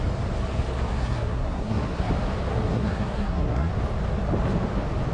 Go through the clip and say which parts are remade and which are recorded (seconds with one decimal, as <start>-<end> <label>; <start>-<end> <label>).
0.0-0.9 recorded; 0.9-2.1 remade; 2.1-2.5 recorded; 2.5-3.7 remade; 3.7-5.1 recorded